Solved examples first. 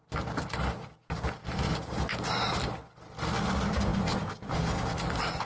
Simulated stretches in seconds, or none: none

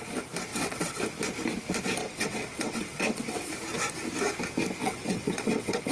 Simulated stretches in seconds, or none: 0.5-1.0 (vocoder, WaveNeXt); 2.0-3.5; 4.8-5.9